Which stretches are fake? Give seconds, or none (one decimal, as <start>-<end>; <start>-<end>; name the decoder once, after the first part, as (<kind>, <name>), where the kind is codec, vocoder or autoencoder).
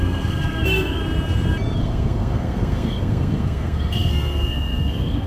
0.0-1.0 (codec, SNAC); 1.8-5.3